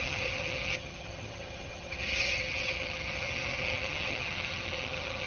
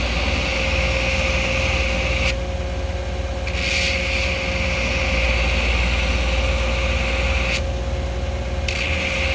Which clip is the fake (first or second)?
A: first